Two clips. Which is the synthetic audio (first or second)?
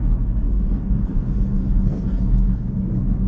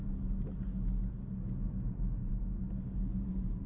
first